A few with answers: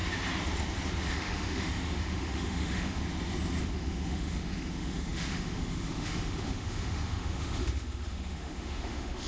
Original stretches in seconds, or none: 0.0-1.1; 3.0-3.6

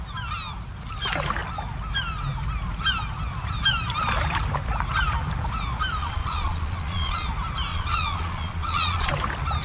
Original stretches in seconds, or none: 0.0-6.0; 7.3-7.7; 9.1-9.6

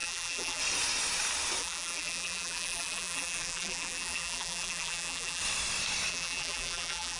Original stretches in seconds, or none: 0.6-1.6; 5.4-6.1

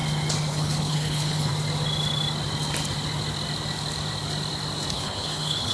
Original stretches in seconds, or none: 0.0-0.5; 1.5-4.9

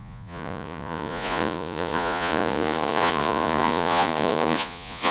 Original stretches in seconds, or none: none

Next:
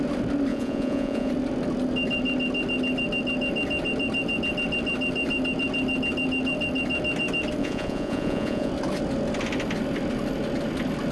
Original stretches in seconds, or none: 0.0-0.5; 1.3-7.6; 8.7-11.1

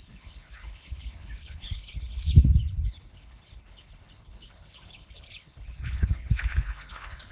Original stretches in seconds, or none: none